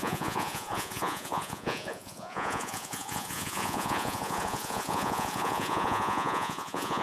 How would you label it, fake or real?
fake